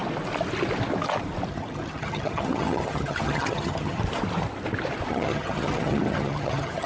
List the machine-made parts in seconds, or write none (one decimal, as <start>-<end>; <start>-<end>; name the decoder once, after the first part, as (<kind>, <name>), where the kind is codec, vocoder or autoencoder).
1.5-4.0 (vocoder, HiFi-GAN); 5.1-6.9